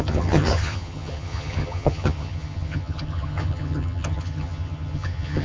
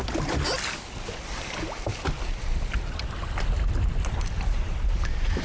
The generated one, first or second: first